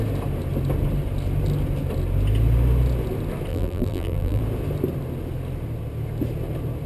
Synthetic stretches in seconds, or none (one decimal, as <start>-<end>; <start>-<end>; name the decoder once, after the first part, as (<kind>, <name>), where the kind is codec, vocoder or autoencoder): 3.5-4.4 (vocoder, BigVGAN v2)